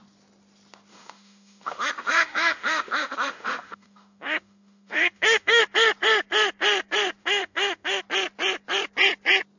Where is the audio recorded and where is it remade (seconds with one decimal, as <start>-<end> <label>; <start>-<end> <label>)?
0.0-0.9 recorded; 0.9-5.6 remade; 5.6-7.2 recorded; 7.2-8.0 remade; 8.0-9.6 recorded